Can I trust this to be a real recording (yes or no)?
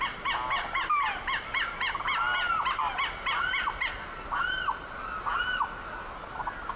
yes